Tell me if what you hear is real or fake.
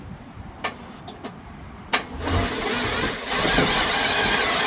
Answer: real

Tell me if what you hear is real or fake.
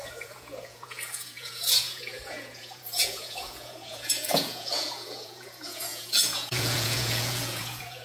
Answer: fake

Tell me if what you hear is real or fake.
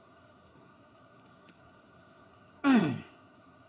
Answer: fake